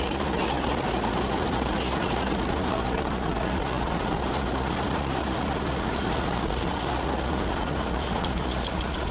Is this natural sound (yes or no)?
no